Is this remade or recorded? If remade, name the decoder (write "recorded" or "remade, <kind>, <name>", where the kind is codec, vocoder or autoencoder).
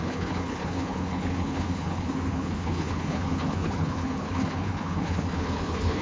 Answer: remade, codec, HILCodec